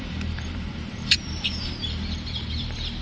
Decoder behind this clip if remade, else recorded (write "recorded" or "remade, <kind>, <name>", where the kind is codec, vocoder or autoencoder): remade, vocoder, BigVGAN v2